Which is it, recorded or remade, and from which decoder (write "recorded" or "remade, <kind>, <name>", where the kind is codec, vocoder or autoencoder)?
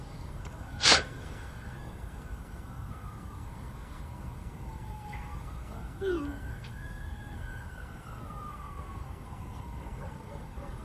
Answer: remade, codec, SNAC